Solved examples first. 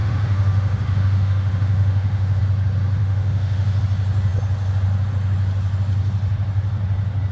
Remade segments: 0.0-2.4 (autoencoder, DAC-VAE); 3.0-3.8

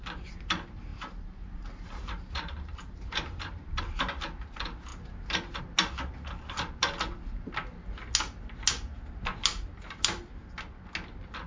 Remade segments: 0.9-3.8 (vocoder, BigVGAN v2)